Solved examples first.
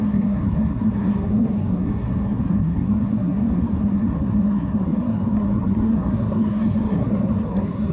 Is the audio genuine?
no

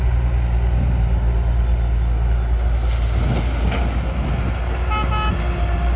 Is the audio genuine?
yes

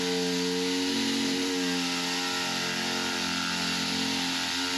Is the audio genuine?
yes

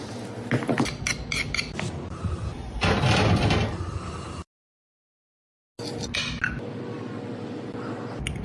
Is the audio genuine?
yes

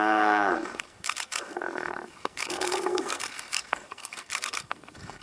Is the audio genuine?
no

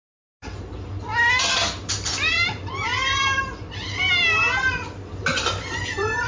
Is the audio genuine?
yes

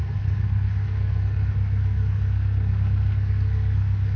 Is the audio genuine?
no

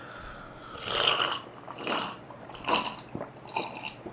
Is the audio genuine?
yes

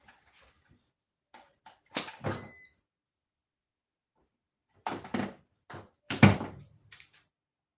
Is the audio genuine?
no